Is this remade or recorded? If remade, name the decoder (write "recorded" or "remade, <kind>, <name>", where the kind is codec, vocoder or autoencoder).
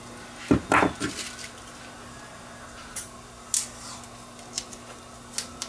recorded